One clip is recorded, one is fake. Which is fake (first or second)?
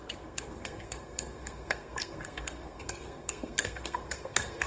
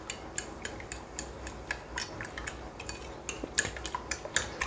first